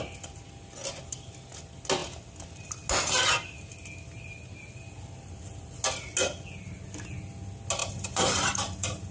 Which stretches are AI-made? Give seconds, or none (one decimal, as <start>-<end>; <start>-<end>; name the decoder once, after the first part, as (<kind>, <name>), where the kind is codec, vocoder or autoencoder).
7.8-9.1 (vocoder, BigVGAN v2)